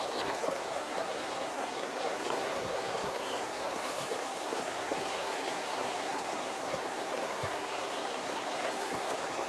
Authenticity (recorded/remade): remade